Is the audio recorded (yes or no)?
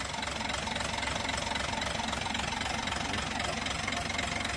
yes